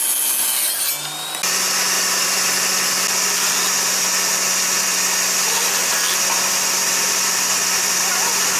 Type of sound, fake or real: real